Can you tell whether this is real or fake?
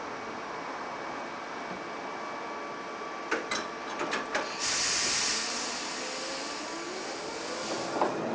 real